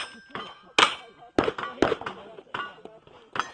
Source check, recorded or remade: recorded